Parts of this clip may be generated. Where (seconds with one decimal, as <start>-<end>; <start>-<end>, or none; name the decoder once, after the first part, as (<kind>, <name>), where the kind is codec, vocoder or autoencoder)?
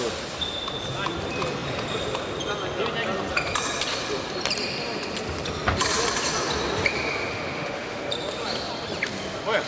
7.3-8.0 (autoencoder, DAC-VAE)